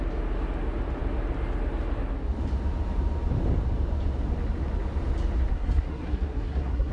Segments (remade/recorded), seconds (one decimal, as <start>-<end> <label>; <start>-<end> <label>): 0.0-5.5 recorded; 5.5-6.9 remade